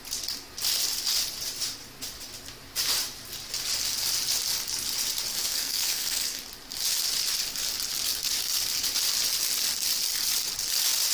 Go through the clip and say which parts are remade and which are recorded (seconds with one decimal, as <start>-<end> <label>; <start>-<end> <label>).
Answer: 0.0-5.4 recorded; 5.4-6.4 remade; 6.4-11.1 recorded